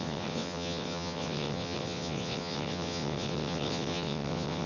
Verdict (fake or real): fake